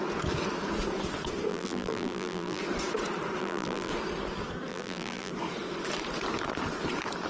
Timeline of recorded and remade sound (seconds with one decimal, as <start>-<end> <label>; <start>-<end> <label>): 0.0-1.5 recorded; 1.5-2.6 remade; 2.6-3.4 recorded; 3.4-3.9 remade; 3.9-4.7 recorded; 4.7-5.3 remade; 5.3-7.3 recorded